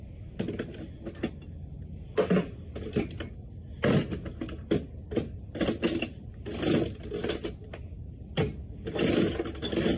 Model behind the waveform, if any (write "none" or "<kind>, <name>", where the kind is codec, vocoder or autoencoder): none